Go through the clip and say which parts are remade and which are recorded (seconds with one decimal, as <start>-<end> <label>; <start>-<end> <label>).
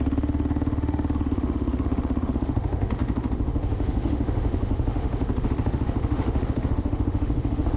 0.0-7.8 remade